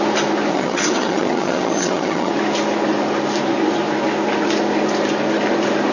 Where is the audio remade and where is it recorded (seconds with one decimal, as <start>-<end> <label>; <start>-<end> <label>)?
0.0-0.5 recorded; 0.5-2.3 remade; 2.3-5.9 recorded